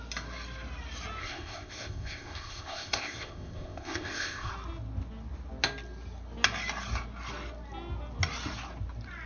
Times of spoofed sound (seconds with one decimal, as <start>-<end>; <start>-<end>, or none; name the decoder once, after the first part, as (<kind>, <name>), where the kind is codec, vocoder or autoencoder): 1.2-4.5 (codec, ZipCodec)